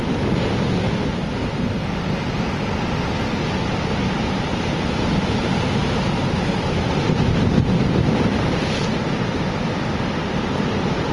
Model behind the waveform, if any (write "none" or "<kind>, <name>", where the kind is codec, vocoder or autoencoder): none